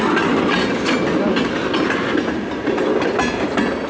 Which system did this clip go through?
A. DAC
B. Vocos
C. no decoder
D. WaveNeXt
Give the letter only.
C